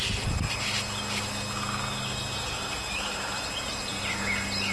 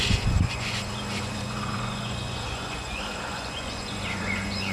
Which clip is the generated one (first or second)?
second